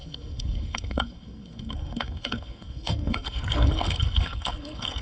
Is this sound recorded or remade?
remade